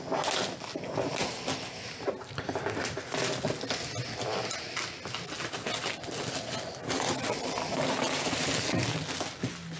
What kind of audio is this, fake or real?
real